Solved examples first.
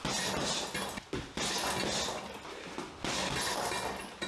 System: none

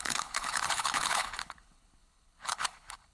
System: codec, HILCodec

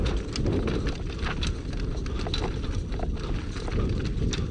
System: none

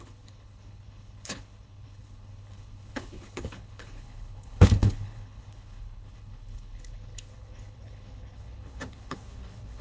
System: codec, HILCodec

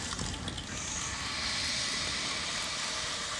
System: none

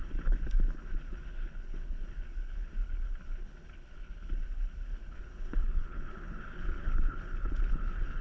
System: codec, HILCodec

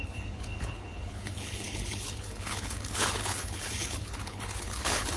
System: codec, HILCodec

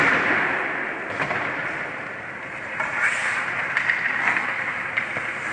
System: none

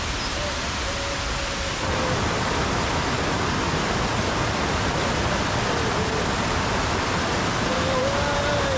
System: none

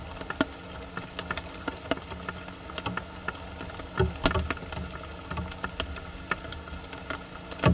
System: none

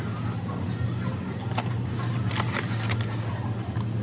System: none